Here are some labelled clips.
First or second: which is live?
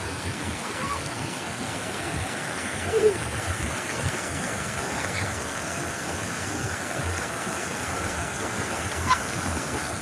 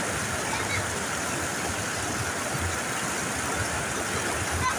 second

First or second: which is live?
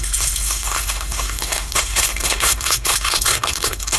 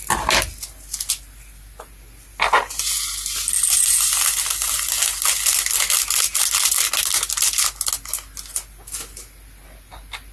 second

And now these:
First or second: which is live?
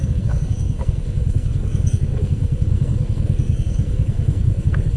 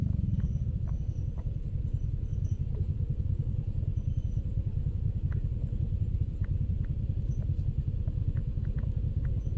second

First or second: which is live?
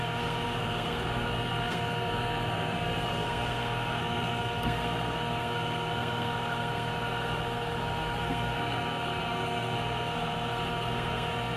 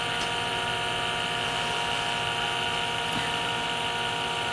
second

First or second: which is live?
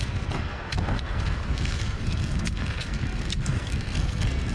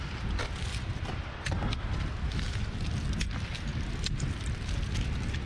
second